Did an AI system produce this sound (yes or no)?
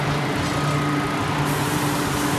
no